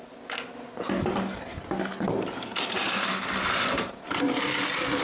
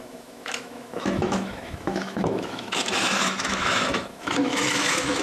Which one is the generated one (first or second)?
second